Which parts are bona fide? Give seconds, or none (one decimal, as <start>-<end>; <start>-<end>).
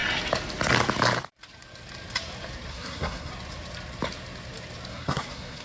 0.0-2.7; 3.3-4.9